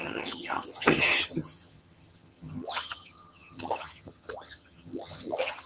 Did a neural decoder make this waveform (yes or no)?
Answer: yes